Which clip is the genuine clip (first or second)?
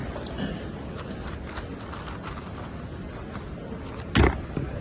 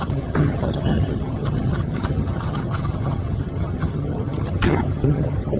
first